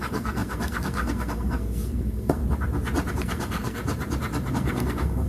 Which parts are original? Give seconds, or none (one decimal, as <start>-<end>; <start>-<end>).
2.4-3.1; 3.8-4.5